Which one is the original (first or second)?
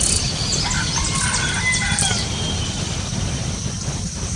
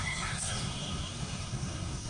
first